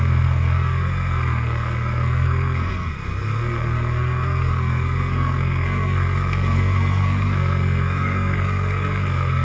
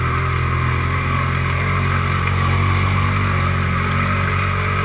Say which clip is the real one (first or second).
second